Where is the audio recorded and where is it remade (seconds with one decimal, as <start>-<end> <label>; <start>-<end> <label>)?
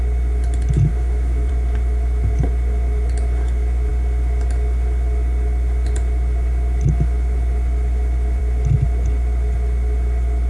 0.0-0.9 recorded; 0.9-1.5 remade; 1.5-10.5 recorded